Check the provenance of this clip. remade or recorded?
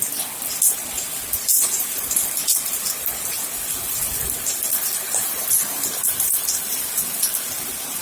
recorded